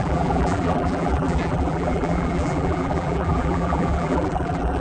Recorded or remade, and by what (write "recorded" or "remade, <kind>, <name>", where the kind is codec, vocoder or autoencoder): remade, vocoder, BigVGAN v2